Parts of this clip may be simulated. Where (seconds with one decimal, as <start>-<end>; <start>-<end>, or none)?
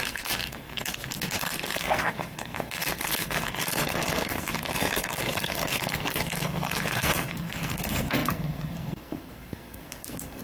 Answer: 0.0-10.4